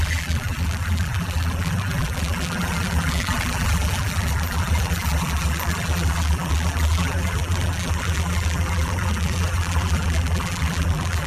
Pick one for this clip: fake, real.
fake